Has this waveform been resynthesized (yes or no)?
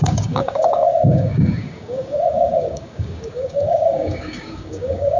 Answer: yes